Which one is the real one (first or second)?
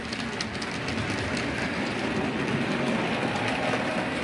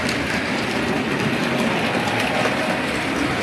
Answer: first